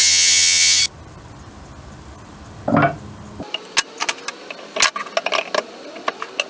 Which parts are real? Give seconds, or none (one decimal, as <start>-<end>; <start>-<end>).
0.8-6.5